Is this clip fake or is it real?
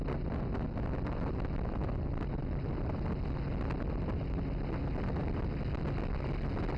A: real